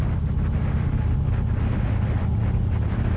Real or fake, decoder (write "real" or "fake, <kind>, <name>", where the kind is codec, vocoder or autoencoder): real